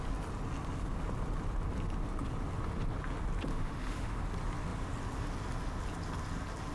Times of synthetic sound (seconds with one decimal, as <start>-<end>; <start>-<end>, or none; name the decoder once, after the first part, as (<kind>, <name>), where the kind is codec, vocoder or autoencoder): 3.5-4.2 (autoencoder, DAC-VAE)

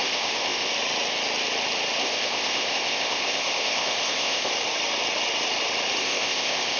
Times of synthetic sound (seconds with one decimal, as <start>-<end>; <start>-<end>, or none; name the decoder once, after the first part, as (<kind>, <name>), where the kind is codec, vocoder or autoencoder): 0.0-0.7 (codec, ZipCodec); 2.0-4.5; 6.0-6.8